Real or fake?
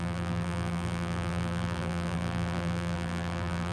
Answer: fake